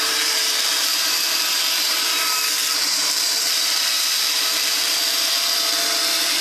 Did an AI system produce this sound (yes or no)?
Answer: yes